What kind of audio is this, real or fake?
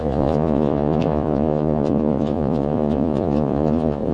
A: fake